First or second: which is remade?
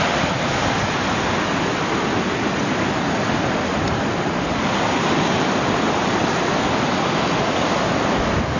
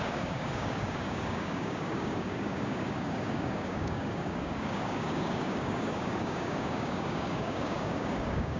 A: second